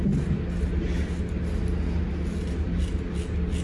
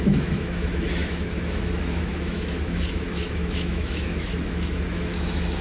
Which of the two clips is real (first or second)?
first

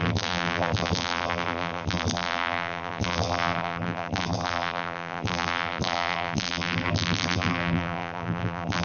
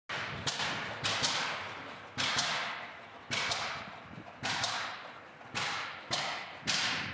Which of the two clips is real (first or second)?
second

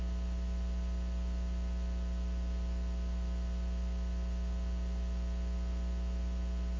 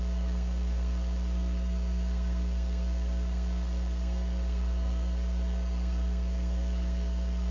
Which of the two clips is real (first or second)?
first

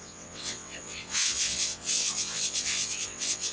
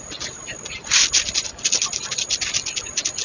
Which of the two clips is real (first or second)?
second